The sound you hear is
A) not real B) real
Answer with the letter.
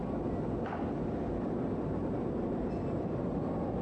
B